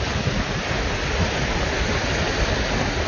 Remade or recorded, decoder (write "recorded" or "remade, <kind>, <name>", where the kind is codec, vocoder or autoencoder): recorded